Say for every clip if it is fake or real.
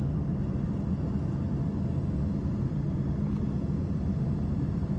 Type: real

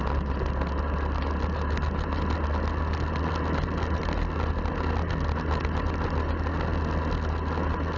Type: real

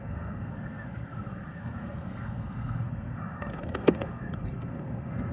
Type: fake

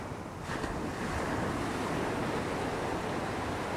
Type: real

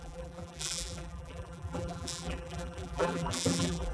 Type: fake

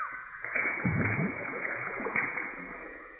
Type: fake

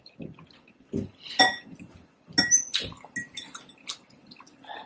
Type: real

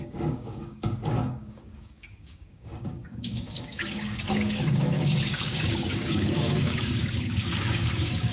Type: fake